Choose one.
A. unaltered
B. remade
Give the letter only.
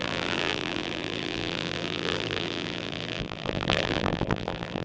B